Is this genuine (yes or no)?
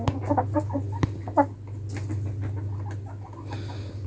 yes